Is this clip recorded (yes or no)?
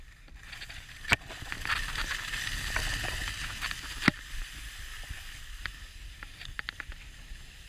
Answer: yes